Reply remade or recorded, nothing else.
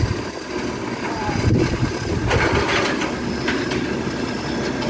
recorded